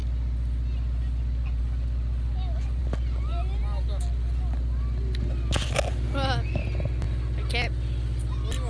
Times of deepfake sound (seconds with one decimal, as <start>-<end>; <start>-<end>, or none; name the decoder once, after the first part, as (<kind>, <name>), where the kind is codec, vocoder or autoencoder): none